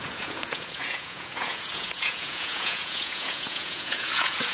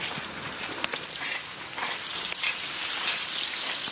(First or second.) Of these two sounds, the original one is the second